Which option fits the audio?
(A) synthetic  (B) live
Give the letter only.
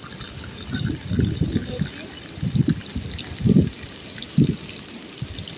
B